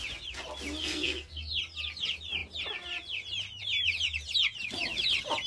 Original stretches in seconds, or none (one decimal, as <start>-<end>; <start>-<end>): 0.0-0.8; 1.5-5.5